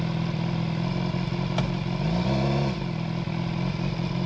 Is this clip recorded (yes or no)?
yes